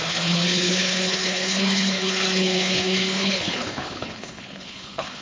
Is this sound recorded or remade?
remade